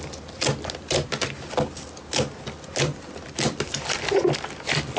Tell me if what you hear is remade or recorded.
recorded